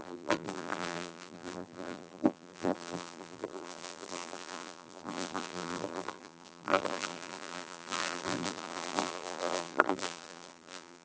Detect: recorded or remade remade